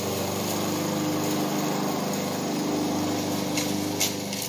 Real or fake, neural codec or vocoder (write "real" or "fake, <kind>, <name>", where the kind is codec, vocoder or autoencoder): real